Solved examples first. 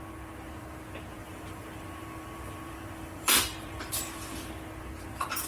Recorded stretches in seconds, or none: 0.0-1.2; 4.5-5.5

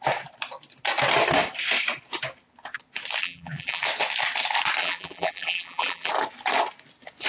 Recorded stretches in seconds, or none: 0.0-3.2; 3.8-4.8; 6.1-7.3

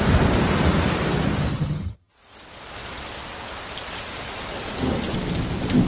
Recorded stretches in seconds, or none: 0.0-1.5; 2.1-5.9